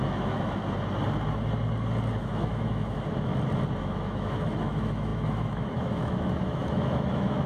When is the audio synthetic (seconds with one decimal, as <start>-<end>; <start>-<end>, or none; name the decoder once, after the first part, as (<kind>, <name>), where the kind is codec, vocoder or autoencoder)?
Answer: 0.0-0.6 (autoencoder, DAC-VAE); 2.2-3.3; 3.8-7.5